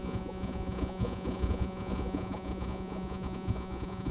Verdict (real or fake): fake